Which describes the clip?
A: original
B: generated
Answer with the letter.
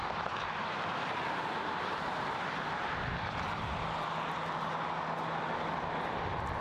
A